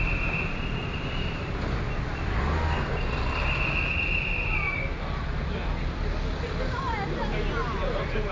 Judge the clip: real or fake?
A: real